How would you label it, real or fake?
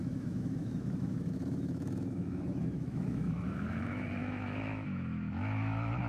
fake